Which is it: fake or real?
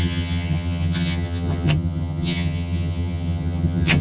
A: fake